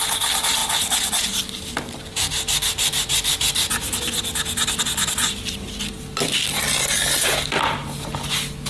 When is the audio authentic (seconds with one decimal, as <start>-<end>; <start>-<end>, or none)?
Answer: 0.0-8.7